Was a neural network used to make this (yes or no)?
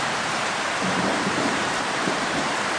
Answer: yes